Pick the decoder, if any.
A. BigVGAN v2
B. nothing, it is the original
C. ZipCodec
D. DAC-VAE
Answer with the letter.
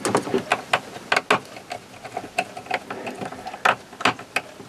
B